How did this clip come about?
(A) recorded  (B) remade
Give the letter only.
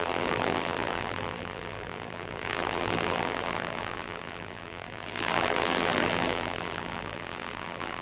B